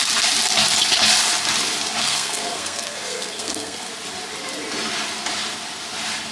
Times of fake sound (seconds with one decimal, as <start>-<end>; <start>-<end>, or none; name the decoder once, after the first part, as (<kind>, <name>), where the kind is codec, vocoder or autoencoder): 2.0-3.9 (codec, SNAC)